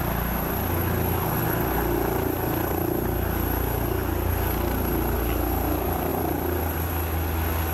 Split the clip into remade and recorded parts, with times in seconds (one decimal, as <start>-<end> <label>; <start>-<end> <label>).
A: 0.0-6.1 recorded; 6.1-6.9 remade; 6.9-7.7 recorded